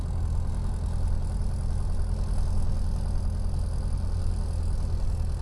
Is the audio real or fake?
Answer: real